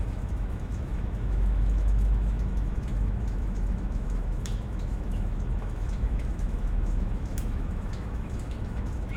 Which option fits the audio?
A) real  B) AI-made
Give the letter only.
B